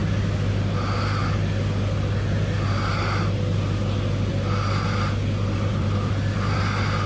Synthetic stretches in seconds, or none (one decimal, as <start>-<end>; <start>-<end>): 5.7-6.6